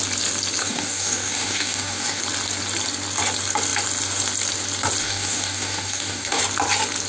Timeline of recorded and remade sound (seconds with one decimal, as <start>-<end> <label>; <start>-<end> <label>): 0.0-0.6 recorded; 0.6-2.2 remade; 2.2-5.0 recorded; 5.0-6.4 remade; 6.4-7.1 recorded